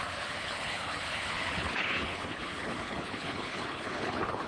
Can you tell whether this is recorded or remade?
remade